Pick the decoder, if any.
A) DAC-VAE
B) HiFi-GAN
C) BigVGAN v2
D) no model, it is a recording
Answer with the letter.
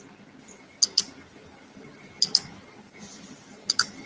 D